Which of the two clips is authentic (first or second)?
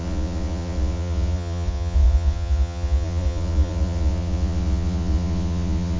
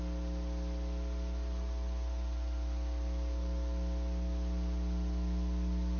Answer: second